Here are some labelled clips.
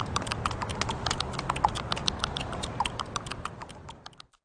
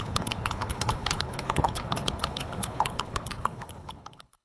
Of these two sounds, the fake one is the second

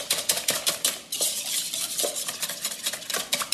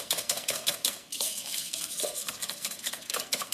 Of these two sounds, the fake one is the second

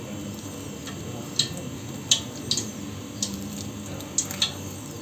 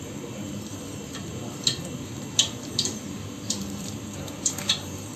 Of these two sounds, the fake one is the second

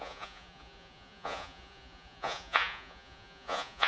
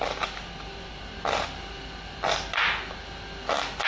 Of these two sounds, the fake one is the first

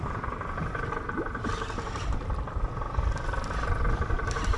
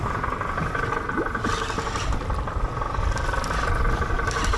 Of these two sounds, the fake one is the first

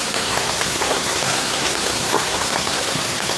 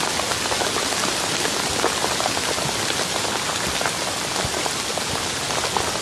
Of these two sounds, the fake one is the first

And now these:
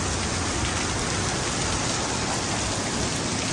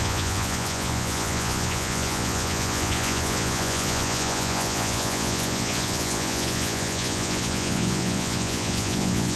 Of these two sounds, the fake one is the second